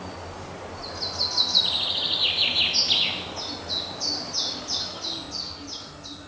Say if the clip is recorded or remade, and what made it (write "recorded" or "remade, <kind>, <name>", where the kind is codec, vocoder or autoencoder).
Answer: recorded